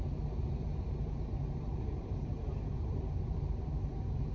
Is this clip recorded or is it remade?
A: remade